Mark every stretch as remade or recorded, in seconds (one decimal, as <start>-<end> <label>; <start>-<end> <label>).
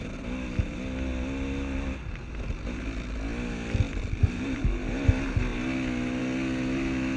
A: 0.0-7.2 recorded